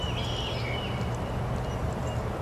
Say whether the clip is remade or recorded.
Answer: recorded